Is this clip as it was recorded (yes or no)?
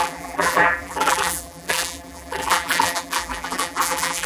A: no